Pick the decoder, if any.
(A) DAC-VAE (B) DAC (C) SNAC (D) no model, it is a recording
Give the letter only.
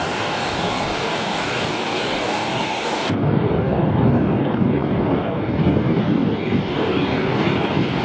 B